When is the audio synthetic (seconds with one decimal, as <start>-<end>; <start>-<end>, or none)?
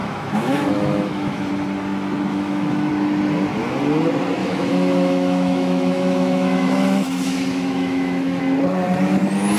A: 0.0-1.5; 2.3-2.9; 4.4-8.4